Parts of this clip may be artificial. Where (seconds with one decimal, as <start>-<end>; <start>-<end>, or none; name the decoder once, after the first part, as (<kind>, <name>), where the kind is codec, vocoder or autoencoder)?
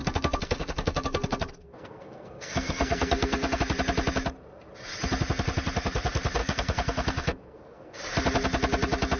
0.0-3.6 (codec, SNAC); 6.4-8.0